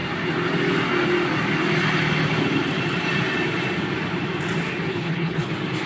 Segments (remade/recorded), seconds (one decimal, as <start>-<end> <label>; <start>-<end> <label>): 0.0-4.9 recorded; 4.9-5.5 remade; 5.5-5.9 recorded